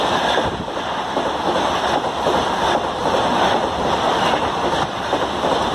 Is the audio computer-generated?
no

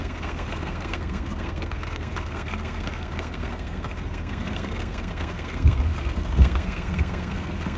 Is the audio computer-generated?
yes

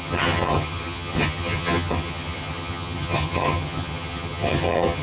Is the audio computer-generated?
yes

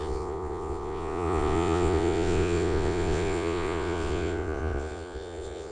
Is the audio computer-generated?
yes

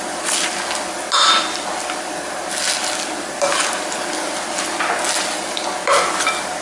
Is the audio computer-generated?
no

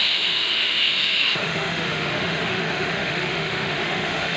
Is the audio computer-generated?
yes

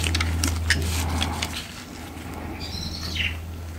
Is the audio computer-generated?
no